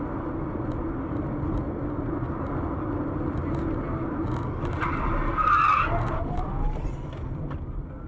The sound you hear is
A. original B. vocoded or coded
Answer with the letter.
A